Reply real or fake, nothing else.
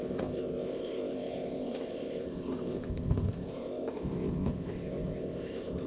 fake